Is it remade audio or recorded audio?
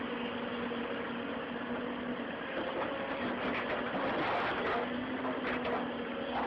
recorded